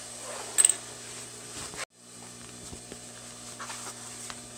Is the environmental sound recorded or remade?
recorded